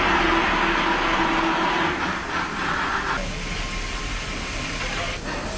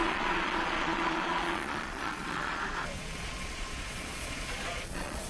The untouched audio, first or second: first